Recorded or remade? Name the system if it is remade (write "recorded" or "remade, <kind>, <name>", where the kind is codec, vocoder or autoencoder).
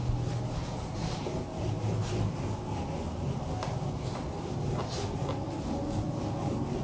recorded